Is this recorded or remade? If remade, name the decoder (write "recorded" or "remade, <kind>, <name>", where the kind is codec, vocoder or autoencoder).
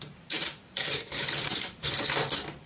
remade, vocoder, BigVGAN v2